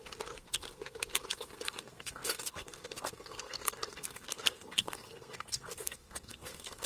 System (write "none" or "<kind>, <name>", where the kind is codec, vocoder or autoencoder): codec, SNAC